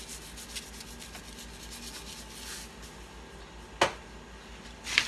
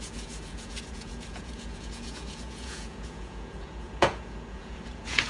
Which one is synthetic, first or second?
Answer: second